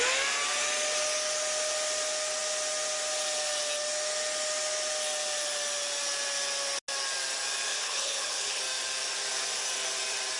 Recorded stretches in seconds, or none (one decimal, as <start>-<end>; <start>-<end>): 0.0-7.7; 8.6-10.4